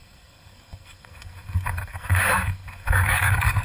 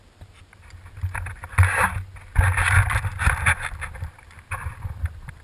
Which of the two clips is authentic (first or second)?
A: second